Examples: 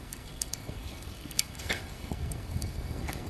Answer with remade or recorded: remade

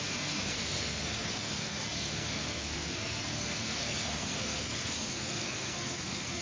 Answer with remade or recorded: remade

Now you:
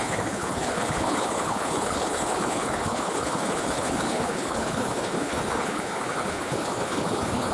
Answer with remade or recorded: remade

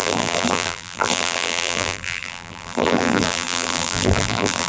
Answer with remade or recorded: remade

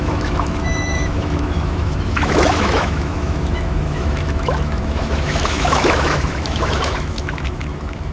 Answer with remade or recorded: remade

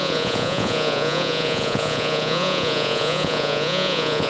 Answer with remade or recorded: remade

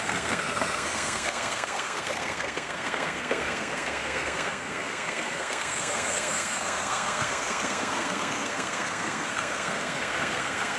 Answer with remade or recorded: remade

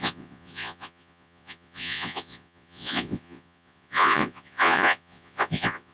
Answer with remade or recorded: remade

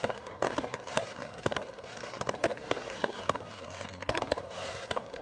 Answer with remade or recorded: remade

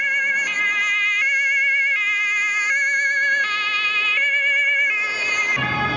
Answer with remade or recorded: recorded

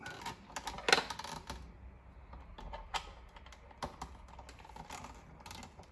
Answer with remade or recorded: recorded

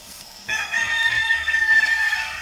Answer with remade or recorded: remade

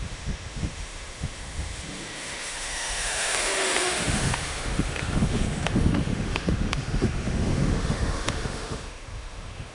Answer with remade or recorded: remade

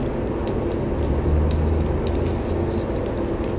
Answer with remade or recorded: recorded